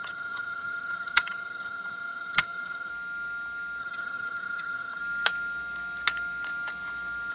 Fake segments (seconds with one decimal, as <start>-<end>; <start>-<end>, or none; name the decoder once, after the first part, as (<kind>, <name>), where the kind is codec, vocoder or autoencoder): 0.0-2.9 (vocoder, HiFi-GAN); 3.8-5.0